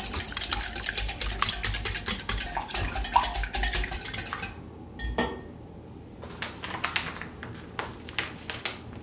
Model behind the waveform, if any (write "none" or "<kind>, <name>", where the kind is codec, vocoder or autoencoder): none